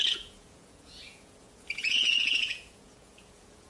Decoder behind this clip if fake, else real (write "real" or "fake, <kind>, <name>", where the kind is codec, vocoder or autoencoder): fake, vocoder, Vocos